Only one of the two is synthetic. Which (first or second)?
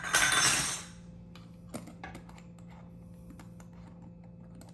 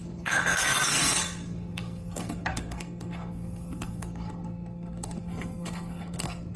second